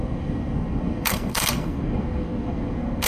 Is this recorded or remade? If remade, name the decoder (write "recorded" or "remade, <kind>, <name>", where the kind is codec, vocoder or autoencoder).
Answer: remade, codec, SNAC